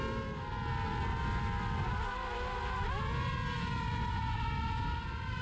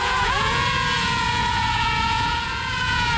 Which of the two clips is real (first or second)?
first